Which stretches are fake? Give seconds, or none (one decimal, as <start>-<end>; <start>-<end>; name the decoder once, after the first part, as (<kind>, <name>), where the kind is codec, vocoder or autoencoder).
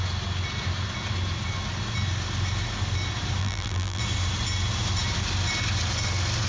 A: 3.4-4.0 (vocoder, BigVGAN v2)